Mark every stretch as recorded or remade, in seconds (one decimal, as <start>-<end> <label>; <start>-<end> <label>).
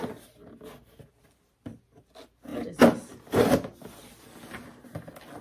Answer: 0.0-5.4 recorded